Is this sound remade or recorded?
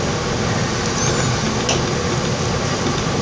recorded